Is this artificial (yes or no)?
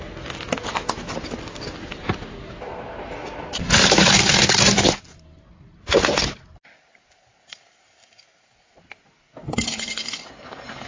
no